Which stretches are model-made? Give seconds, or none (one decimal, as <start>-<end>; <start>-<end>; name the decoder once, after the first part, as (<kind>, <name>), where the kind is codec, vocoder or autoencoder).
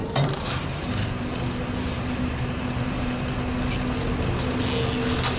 0.0-3.2 (vocoder, BigVGAN v2)